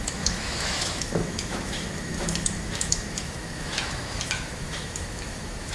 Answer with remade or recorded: remade